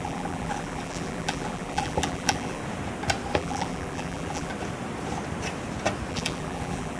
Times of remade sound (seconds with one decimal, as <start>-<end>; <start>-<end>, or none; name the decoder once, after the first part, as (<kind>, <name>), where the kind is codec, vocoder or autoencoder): 0.0-2.6 (vocoder, BigVGAN v2); 3.3-4.5; 6.1-7.0